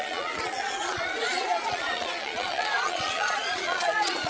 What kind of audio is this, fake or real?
fake